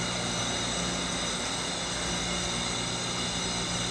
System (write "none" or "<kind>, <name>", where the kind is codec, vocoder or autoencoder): none